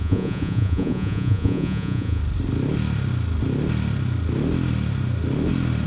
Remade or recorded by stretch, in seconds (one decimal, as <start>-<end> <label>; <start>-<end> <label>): 0.0-2.2 remade; 2.2-5.9 recorded